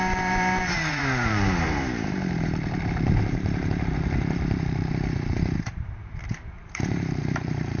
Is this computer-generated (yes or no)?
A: yes